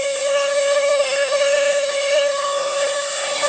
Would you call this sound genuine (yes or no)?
no